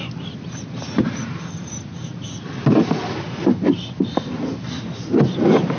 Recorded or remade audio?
recorded